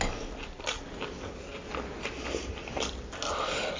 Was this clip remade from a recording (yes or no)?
no